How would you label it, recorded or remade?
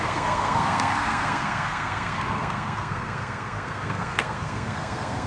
remade